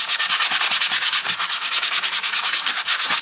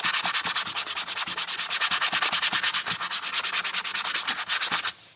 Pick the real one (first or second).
second